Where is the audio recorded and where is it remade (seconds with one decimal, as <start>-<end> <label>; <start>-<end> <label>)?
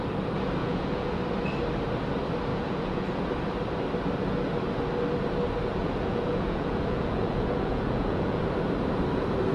0.0-0.6 recorded; 0.6-1.2 remade; 1.2-2.5 recorded; 2.5-3.2 remade; 3.2-5.7 recorded; 5.7-8.4 remade; 8.4-9.5 recorded